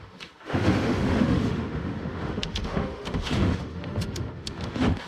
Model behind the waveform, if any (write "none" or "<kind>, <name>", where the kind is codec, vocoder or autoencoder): autoencoder, DAC-VAE